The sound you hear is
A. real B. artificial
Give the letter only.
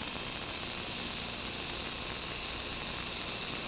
A